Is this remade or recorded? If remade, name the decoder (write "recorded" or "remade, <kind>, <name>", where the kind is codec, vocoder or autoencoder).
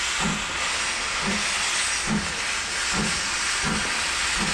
recorded